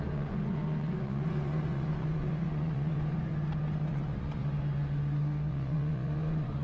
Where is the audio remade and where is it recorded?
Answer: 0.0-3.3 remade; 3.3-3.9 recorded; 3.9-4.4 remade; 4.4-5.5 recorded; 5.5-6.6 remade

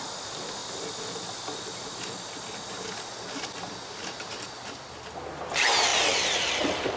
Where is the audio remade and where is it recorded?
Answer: 0.0-5.9 recorded; 5.9-6.5 remade; 6.5-7.0 recorded

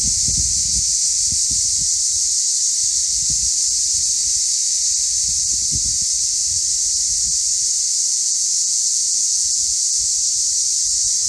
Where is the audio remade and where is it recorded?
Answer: 0.0-8.1 recorded; 8.1-9.8 remade; 9.8-11.3 recorded

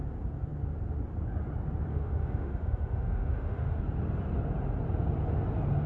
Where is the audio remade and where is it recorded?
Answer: 0.0-1.9 recorded; 1.9-3.8 remade; 3.8-5.9 recorded

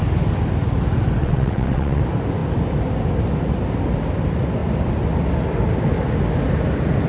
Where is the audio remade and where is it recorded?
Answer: 0.0-1.2 recorded; 1.2-2.0 remade; 2.0-7.1 recorded